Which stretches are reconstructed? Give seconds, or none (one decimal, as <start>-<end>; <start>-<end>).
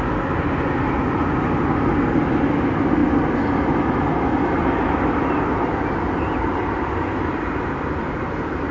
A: none